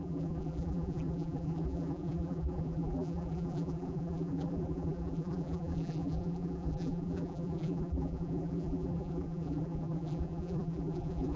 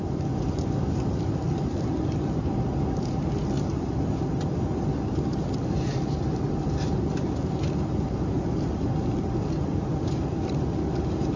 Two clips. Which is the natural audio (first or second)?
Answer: second